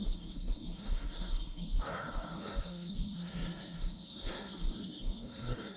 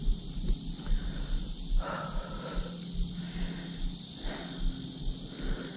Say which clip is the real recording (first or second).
second